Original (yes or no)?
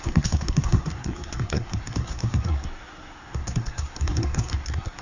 no